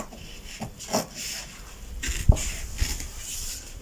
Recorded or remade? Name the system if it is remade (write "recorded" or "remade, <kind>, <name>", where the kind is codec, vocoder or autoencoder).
recorded